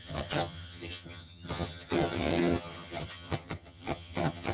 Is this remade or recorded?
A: remade